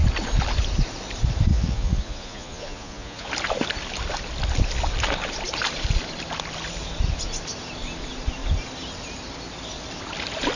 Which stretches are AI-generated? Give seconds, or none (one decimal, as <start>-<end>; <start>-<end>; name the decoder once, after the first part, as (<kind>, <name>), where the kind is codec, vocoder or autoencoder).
1.5-3.3 (vocoder, Vocos)